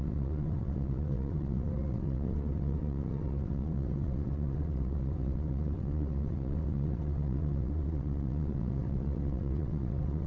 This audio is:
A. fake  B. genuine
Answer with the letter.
A